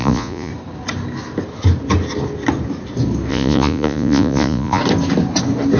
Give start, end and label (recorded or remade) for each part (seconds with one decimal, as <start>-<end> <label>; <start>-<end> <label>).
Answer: 0.0-0.5 remade; 0.5-3.3 recorded; 3.3-4.8 remade; 4.8-5.8 recorded